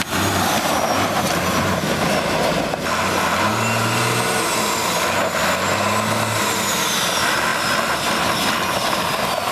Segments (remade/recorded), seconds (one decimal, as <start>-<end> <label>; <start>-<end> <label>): 0.0-9.5 recorded